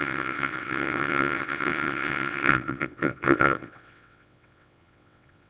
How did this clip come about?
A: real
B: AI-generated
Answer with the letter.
B